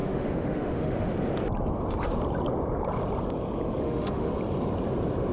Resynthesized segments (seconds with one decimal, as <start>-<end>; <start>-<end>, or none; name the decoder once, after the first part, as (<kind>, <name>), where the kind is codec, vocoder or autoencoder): 0.0-1.1 (autoencoder, DAC-VAE); 3.8-4.3